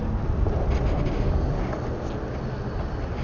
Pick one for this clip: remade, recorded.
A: recorded